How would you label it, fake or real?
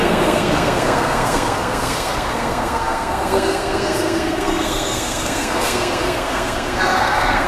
fake